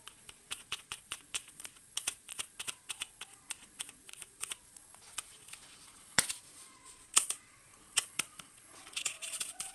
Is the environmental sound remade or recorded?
remade